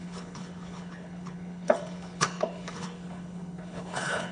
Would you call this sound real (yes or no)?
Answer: no